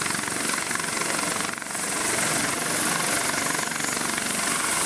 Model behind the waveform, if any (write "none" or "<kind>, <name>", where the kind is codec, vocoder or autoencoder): none